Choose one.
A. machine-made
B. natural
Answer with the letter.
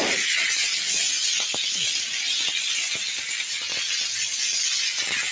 B